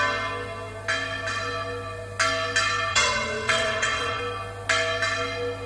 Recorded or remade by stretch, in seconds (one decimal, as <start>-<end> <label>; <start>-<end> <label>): 0.0-2.9 recorded; 2.9-4.2 remade; 4.2-5.7 recorded